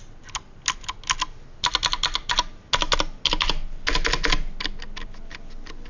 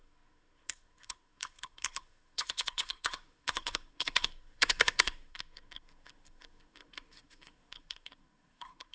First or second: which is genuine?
first